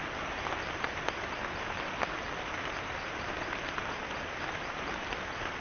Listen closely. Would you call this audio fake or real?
real